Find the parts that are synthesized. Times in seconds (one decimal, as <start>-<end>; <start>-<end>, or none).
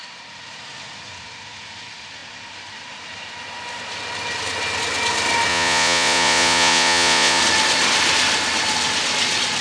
5.5-7.4